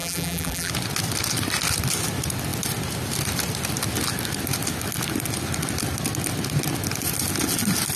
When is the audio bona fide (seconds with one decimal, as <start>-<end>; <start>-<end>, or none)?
0.7-8.0